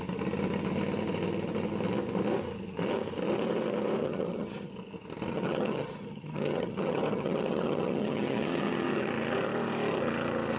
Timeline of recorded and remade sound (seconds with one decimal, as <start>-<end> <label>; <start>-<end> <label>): 0.0-4.0 recorded; 4.0-4.7 remade; 4.7-5.3 recorded; 5.3-9.1 remade; 9.1-10.6 recorded